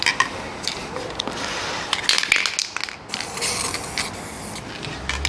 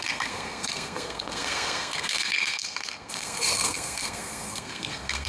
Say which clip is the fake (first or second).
second